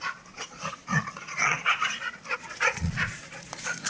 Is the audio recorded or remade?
remade